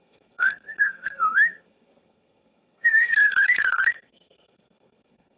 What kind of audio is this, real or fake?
fake